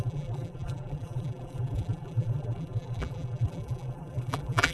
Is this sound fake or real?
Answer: fake